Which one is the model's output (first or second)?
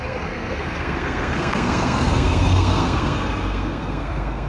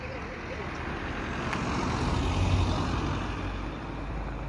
first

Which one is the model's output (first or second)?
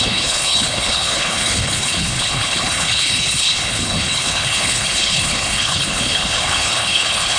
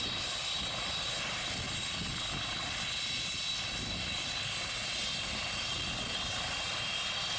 first